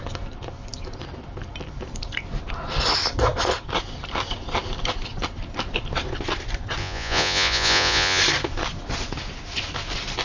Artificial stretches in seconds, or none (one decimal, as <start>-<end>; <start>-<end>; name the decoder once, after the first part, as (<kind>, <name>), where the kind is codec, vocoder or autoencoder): 6.8-8.2 (vocoder, Vocos)